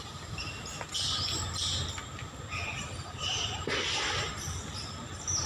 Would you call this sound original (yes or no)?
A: yes